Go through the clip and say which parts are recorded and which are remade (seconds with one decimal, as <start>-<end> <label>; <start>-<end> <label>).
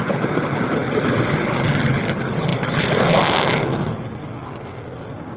0.0-5.4 recorded